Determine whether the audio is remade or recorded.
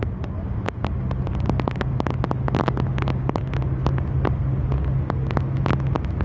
recorded